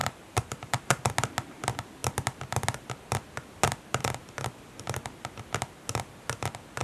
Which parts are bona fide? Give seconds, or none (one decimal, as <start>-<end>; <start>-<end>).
1.0-6.8